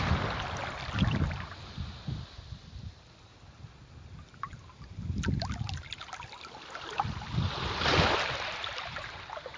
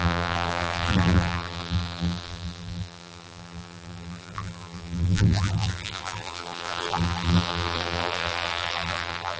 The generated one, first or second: second